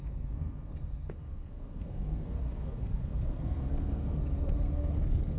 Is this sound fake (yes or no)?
yes